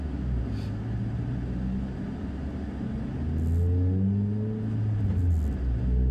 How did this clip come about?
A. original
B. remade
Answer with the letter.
A